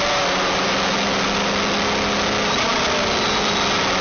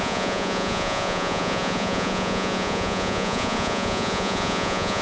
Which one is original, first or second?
first